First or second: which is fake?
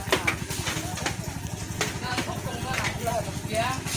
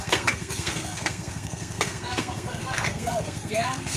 second